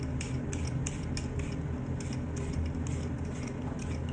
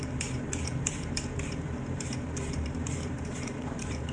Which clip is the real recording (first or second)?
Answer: first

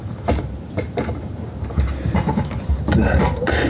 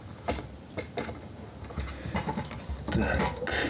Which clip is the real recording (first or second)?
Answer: second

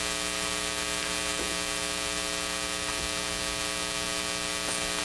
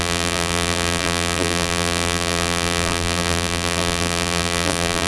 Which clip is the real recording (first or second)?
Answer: first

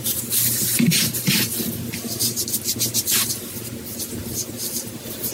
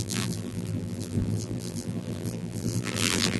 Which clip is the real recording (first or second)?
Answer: first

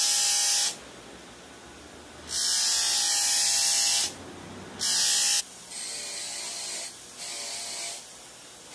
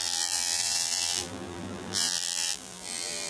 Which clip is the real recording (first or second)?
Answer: first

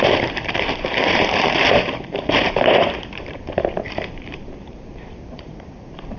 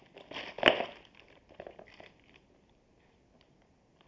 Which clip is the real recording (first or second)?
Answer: second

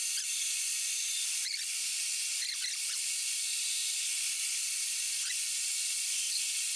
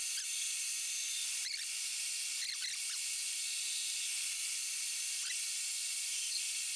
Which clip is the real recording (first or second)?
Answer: second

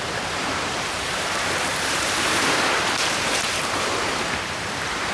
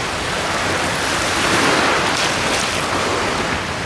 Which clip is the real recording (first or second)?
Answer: second